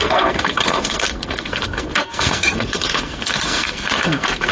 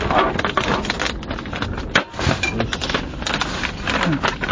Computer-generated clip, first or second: first